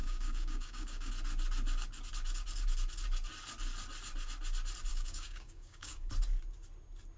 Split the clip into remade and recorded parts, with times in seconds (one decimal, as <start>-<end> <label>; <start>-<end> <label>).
0.0-1.1 remade; 1.1-4.9 recorded; 4.9-6.1 remade; 6.1-7.2 recorded